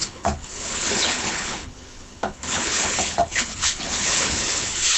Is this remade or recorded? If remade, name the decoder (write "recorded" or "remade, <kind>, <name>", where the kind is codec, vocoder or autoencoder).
remade, codec, HILCodec